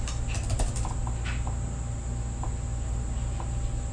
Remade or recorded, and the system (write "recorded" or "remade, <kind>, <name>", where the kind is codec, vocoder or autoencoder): recorded